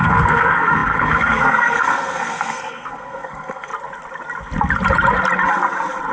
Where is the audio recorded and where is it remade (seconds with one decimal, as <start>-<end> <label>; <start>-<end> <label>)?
0.0-3.7 remade; 3.7-6.1 recorded